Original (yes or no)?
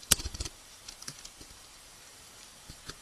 no